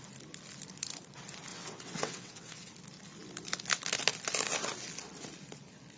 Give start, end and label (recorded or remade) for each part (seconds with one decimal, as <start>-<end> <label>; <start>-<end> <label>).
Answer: 0.0-1.5 recorded; 1.5-2.7 remade; 2.7-6.0 recorded